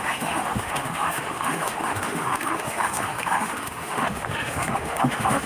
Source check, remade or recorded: remade